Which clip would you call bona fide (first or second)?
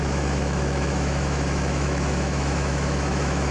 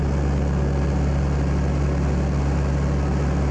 second